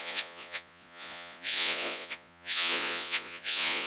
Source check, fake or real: fake